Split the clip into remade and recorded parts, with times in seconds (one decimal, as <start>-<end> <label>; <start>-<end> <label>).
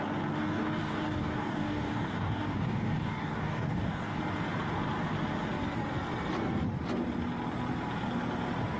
0.0-0.4 recorded; 0.4-4.2 remade; 4.2-8.8 recorded